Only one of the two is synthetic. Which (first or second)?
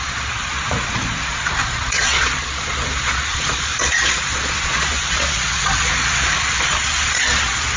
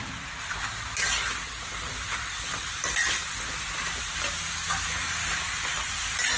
first